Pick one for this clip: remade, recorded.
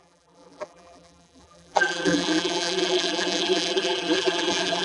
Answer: remade